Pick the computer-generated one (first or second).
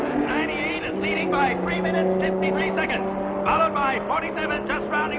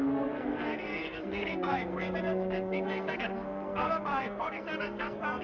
second